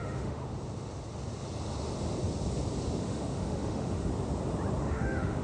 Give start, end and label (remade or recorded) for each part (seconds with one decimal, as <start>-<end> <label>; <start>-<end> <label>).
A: 0.0-0.4 remade; 0.4-3.0 recorded; 3.0-4.1 remade; 4.1-4.8 recorded; 4.8-5.4 remade